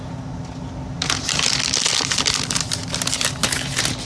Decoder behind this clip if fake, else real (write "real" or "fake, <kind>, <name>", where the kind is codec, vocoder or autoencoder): real